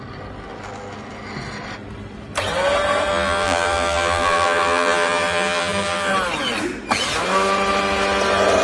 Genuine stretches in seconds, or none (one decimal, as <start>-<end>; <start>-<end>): 0.0-3.1; 6.1-8.6